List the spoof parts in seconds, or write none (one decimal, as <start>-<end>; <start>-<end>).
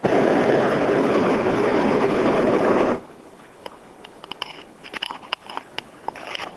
0.5-6.6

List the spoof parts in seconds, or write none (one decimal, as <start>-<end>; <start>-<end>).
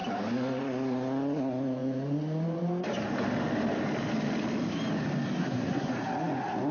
5.4-5.9